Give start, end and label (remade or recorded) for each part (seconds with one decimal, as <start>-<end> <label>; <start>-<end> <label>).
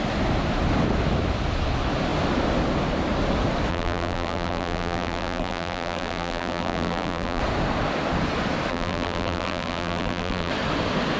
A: 0.0-3.7 recorded; 3.7-7.4 remade; 7.4-8.7 recorded; 8.7-10.5 remade; 10.5-11.2 recorded